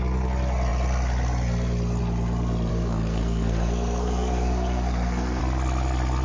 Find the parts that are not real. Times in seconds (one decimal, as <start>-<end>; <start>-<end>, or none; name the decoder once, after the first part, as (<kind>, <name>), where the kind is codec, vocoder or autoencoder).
2.7-5.4 (codec, SNAC)